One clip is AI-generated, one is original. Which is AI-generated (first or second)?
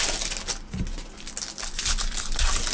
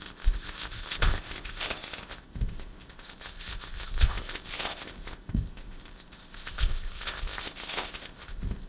second